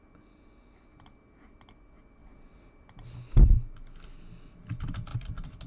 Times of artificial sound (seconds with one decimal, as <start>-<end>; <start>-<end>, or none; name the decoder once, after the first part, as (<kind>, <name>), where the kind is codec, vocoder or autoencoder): 5.1-5.7 (vocoder, BigVGAN v2)